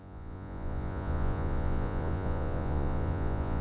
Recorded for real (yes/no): no